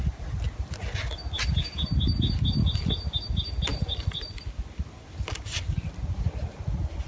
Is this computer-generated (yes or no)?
no